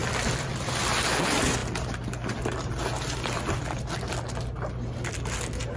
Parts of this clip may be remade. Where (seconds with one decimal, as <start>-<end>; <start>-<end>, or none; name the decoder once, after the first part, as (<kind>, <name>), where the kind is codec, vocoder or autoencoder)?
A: 0.0-0.8 (vocoder, BigVGAN v2)